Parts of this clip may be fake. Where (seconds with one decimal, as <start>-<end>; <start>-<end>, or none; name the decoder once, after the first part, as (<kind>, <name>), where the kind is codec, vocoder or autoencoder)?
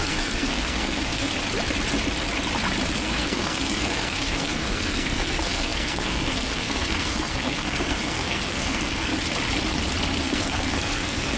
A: 0.0-1.3 (codec, SNAC); 2.9-9.1; 10.2-11.4